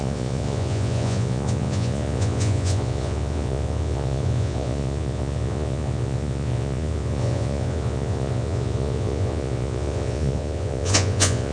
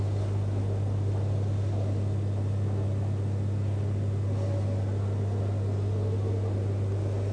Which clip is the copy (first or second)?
first